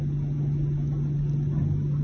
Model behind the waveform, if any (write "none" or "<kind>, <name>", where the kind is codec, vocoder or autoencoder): none